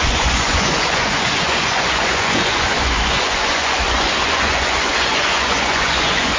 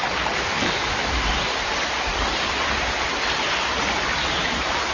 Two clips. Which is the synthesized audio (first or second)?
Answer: first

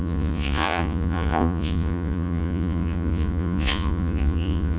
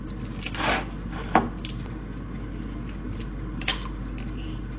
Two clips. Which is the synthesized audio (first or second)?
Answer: first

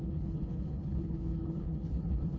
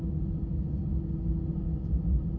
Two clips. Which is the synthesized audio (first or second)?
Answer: first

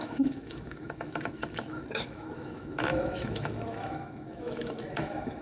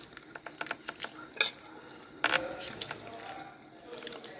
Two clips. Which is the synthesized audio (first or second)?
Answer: first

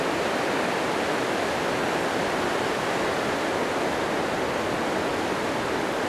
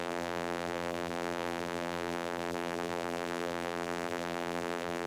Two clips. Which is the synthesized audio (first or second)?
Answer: second